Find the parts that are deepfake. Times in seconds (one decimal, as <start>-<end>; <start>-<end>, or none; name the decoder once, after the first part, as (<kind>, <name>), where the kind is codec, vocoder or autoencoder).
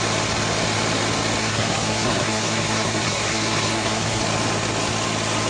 1.4-4.2 (codec, SNAC)